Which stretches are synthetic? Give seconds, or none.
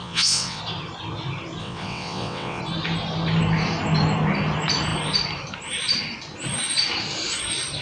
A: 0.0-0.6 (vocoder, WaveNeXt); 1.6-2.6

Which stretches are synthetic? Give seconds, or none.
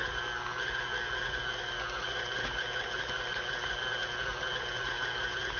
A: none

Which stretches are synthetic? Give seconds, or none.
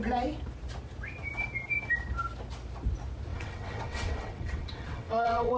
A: 3.3-5.6 (vocoder, WaveNeXt)